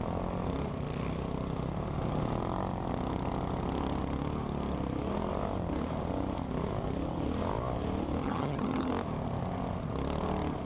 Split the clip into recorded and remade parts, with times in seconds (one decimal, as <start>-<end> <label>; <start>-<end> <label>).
0.0-8.2 recorded; 8.2-8.9 remade; 8.9-10.7 recorded